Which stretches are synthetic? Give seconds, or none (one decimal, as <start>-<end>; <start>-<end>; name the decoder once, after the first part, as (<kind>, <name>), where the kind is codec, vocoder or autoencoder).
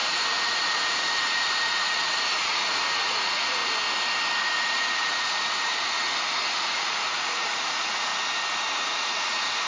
0.0-3.6 (vocoder, Vocos); 4.4-6.0; 6.6-8.1; 8.7-9.7